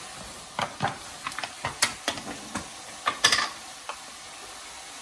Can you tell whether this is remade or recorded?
recorded